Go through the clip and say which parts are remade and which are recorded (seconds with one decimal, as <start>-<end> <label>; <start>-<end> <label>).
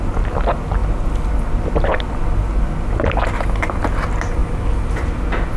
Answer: 0.0-5.6 recorded